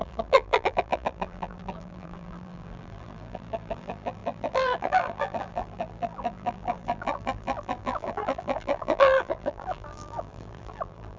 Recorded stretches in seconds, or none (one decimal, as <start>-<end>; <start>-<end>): none